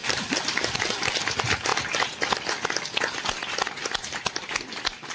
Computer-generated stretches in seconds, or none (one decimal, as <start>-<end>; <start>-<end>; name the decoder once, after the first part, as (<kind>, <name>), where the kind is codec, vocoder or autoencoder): 0.0-1.2 (vocoder, BigVGAN v2)